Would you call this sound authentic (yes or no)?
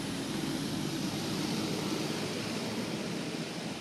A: yes